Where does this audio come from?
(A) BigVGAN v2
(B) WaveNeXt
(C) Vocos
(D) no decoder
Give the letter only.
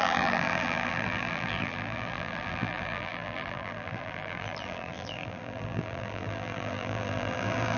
A